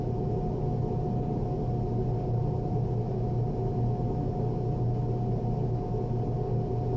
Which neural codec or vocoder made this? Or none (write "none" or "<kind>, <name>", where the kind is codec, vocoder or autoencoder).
none